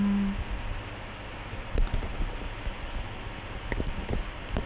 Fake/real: real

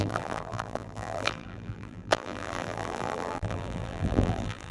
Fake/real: fake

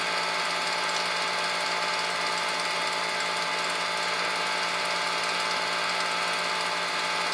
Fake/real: real